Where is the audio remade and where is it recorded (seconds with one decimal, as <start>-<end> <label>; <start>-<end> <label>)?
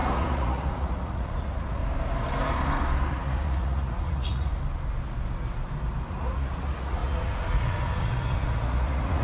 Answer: 0.0-1.8 remade; 1.8-3.1 recorded; 3.1-4.5 remade; 4.5-6.1 recorded; 6.1-9.2 remade